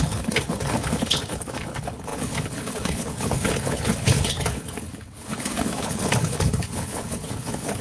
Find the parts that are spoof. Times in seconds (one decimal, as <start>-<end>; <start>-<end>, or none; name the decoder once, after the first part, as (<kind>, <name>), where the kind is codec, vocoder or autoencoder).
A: 0.0-7.8 (codec, HILCodec)